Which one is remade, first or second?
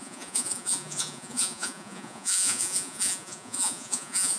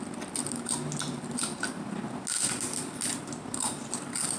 first